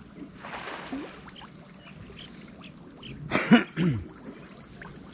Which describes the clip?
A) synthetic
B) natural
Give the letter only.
B